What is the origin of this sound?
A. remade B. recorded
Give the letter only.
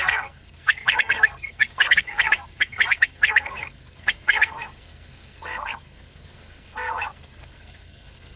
A